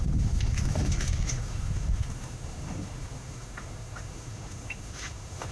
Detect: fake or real fake